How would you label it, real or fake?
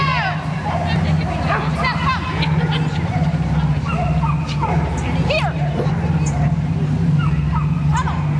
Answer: real